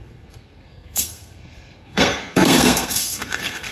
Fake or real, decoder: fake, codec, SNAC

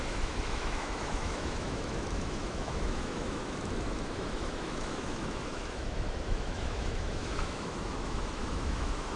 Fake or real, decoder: fake, autoencoder, DAC-VAE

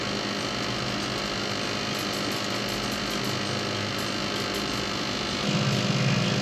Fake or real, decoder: real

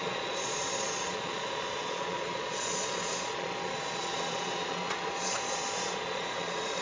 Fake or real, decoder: fake, vocoder, Vocos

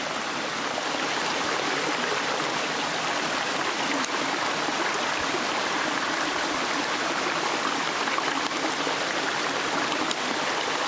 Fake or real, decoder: real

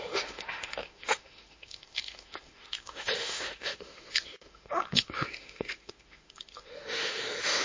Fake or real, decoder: fake, autoencoder, DAC-VAE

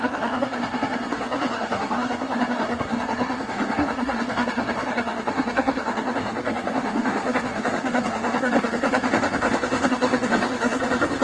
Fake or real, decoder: fake, codec, SNAC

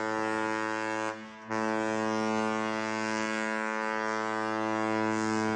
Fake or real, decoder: real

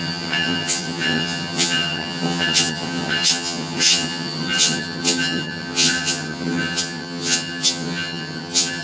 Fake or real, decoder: fake, vocoder, HiFi-GAN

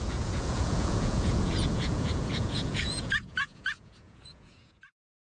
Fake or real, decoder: fake, vocoder, Vocos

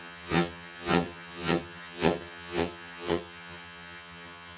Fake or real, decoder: fake, vocoder, HiFi-GAN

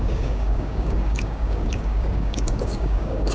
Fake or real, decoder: fake, codec, DAC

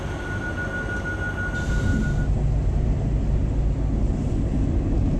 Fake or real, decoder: real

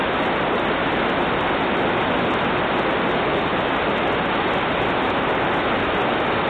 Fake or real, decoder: real